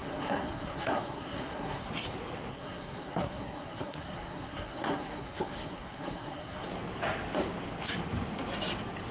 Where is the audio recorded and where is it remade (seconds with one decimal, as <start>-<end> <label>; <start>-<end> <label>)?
0.0-1.9 remade; 1.9-2.5 recorded; 2.5-6.7 remade; 6.7-9.1 recorded